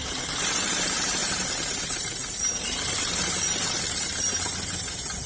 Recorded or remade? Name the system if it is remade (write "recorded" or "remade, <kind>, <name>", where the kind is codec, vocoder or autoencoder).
remade, vocoder, BigVGAN v2